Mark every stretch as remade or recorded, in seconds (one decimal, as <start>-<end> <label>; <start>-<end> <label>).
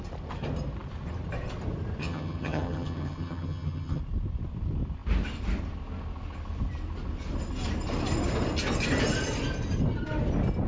0.0-2.0 recorded; 2.0-4.0 remade; 4.0-10.7 recorded